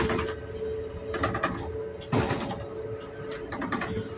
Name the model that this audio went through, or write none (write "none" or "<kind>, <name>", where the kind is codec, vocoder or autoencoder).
none